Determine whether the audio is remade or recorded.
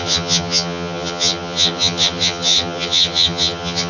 remade